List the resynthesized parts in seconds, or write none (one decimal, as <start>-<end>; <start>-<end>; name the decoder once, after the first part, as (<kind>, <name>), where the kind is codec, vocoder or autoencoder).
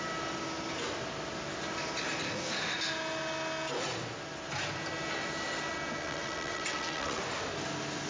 6.0-7.2 (vocoder, WaveNeXt)